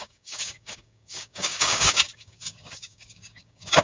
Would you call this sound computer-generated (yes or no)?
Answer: yes